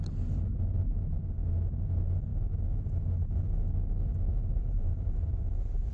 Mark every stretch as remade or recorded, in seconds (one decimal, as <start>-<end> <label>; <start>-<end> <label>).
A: 0.0-0.7 recorded; 0.7-1.2 remade; 1.2-4.3 recorded; 4.3-5.4 remade; 5.4-5.9 recorded